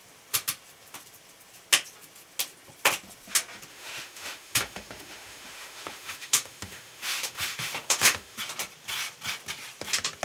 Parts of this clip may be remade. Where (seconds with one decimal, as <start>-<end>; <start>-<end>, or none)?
3.7-8.4